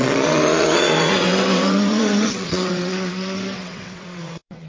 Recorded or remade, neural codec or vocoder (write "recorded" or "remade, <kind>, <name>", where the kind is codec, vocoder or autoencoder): remade, vocoder, WaveNeXt